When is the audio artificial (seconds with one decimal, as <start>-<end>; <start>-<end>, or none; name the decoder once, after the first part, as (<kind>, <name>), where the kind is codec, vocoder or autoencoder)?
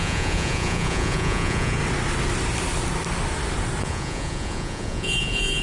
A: 0.0-1.8 (vocoder, Vocos); 3.8-5.6